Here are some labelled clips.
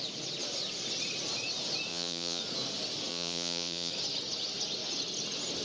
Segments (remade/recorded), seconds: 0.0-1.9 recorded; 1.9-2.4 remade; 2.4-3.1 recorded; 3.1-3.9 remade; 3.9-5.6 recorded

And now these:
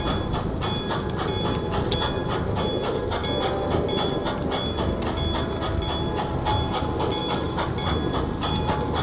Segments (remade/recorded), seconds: 0.0-9.0 recorded

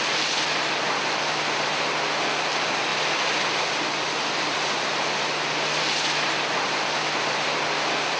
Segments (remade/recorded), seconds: 0.0-8.2 recorded

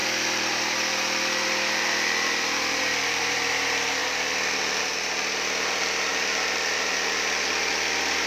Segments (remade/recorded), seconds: 0.0-4.0 remade; 4.0-4.8 recorded; 4.8-6.1 remade; 6.1-7.7 recorded; 7.7-8.3 remade

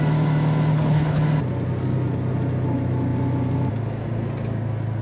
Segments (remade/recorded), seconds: 0.0-0.7 recorded; 0.7-1.2 remade; 1.2-5.0 recorded

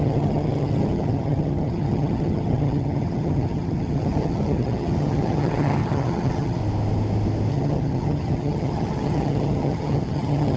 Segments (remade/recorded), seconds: 0.0-6.6 remade; 6.6-7.5 recorded; 7.5-10.6 remade

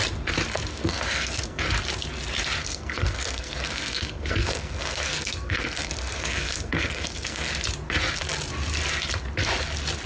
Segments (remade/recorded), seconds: 0.0-0.7 recorded; 0.7-1.6 remade; 1.6-2.6 recorded; 2.6-7.5 remade; 7.5-10.1 recorded

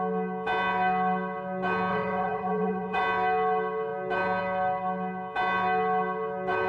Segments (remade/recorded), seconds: 0.0-1.9 recorded; 1.9-3.0 remade; 3.0-6.7 recorded